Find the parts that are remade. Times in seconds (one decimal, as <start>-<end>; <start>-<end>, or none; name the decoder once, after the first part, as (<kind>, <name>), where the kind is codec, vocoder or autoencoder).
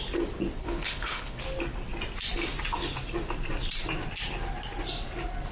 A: 0.6-1.4 (codec, HILCodec)